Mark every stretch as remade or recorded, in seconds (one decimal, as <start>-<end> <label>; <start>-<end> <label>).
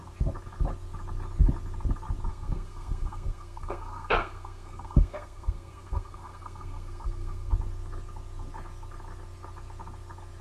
0.0-2.3 recorded; 2.3-7.5 remade; 7.5-10.4 recorded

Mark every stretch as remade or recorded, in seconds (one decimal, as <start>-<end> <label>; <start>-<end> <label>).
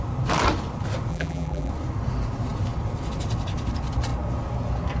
0.0-1.1 recorded; 1.1-1.7 remade; 1.7-5.0 recorded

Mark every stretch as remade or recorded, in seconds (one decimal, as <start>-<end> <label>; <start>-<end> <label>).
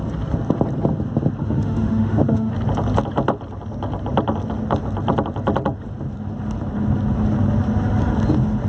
0.0-1.4 recorded; 1.4-2.5 remade; 2.5-8.7 recorded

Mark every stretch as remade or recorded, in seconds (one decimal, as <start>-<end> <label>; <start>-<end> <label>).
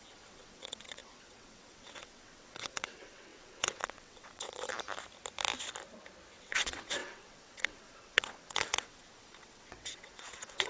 0.0-4.7 remade; 4.7-6.4 recorded; 6.4-10.7 remade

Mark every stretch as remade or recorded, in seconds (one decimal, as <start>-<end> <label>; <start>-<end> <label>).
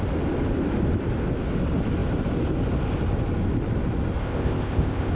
0.0-4.2 recorded; 4.2-5.1 remade